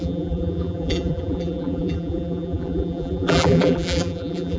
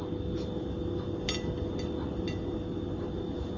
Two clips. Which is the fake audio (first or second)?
first